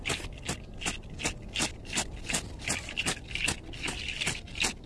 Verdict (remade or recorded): recorded